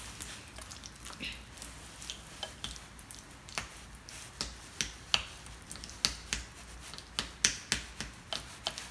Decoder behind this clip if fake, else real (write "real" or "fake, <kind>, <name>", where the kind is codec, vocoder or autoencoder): real